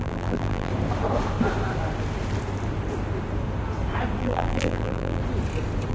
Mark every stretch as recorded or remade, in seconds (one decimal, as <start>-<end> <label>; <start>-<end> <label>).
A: 0.0-0.7 remade; 0.7-4.2 recorded; 4.2-5.2 remade; 5.2-5.9 recorded